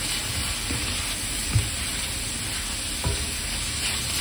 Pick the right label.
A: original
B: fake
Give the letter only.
A